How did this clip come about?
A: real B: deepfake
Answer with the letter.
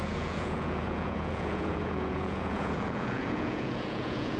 B